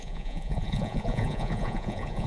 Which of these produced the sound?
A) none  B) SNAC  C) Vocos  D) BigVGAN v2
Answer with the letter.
C